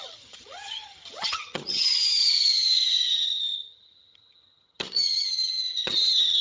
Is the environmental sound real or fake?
fake